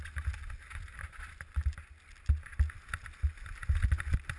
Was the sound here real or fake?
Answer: real